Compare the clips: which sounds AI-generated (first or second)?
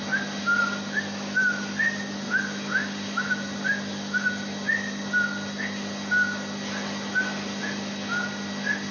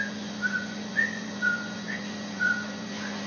second